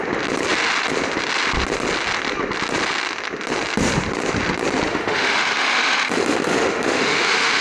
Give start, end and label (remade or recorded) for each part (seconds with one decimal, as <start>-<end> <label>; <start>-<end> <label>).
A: 0.0-4.9 recorded; 4.9-7.6 remade